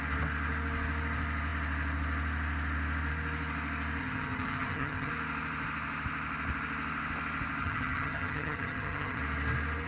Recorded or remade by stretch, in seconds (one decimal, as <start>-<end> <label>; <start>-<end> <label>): 0.0-4.0 recorded; 4.0-5.1 remade; 5.1-7.6 recorded; 7.6-9.2 remade; 9.2-9.9 recorded